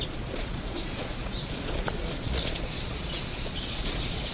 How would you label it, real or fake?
fake